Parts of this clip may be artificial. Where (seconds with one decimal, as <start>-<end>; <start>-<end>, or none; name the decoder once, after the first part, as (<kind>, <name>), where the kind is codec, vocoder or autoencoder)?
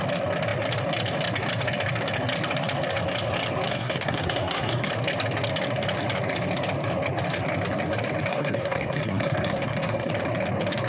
3.7-4.9 (codec, SNAC); 8.3-10.1